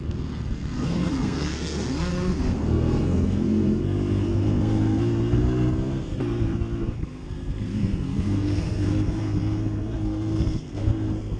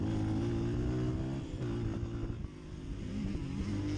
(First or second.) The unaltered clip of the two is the second